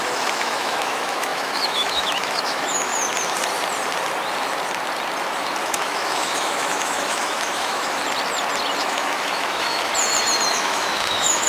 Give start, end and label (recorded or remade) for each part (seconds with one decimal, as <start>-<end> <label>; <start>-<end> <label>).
0.0-2.9 remade; 2.9-5.6 recorded; 5.6-8.0 remade; 8.0-8.8 recorded; 8.8-9.9 remade; 9.9-10.5 recorded; 10.5-11.5 remade